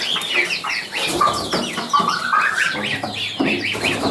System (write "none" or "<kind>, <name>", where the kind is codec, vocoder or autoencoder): none